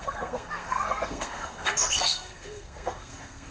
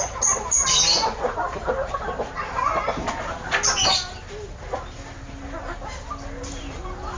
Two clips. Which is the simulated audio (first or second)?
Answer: first